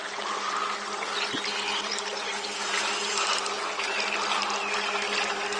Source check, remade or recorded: recorded